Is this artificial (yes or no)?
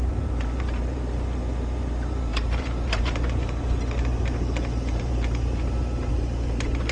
yes